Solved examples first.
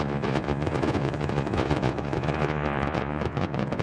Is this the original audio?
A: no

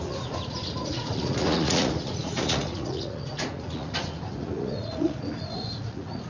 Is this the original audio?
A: no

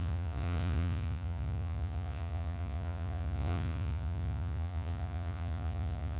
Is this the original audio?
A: no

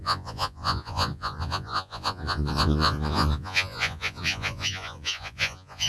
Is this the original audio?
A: no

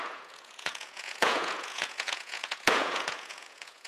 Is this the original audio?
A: no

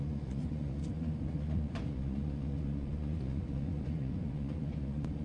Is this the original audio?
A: no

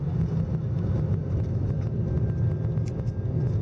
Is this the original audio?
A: yes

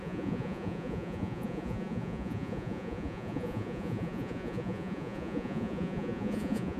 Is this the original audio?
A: no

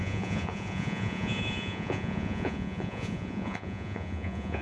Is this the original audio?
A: no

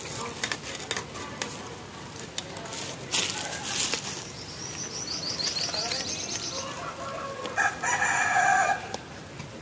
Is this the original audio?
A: yes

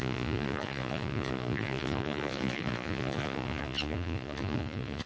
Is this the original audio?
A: no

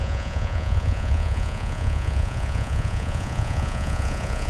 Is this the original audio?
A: no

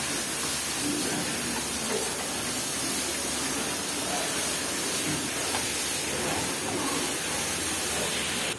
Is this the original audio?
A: yes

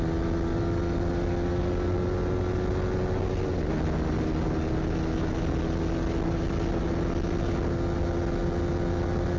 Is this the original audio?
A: yes